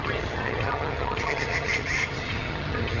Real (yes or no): no